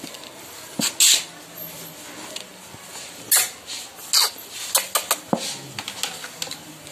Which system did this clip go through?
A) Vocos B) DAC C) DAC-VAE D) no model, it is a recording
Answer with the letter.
D